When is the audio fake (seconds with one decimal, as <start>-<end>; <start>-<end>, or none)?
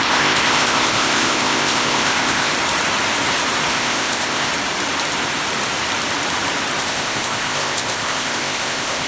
0.0-2.5; 3.7-4.5; 6.8-9.1